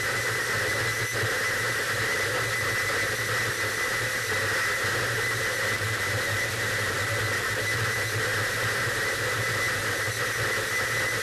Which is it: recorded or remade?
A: recorded